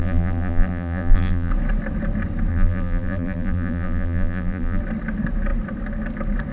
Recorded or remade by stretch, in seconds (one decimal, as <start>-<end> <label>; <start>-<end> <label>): 0.0-1.5 remade; 1.5-2.5 recorded; 2.5-4.8 remade; 4.8-6.5 recorded